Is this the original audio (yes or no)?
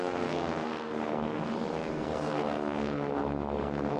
no